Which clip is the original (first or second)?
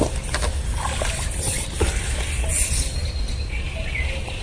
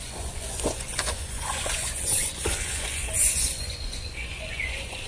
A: first